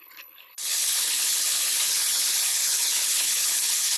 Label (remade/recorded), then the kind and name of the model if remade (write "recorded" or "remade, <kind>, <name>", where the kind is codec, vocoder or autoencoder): remade, codec, HILCodec